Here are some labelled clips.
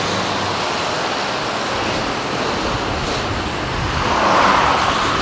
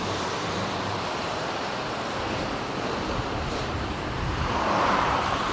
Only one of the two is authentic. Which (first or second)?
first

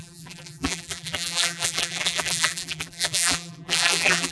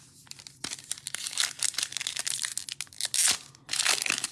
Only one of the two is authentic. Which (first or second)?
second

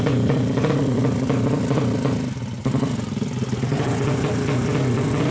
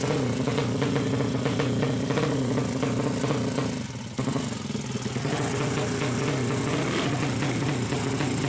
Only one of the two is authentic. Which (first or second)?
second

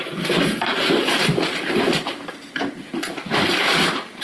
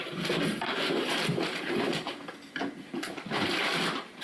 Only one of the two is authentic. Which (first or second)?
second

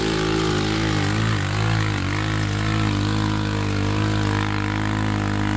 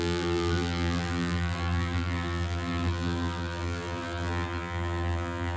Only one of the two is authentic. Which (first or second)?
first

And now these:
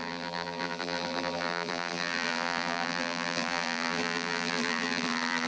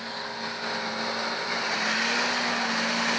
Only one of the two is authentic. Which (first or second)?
second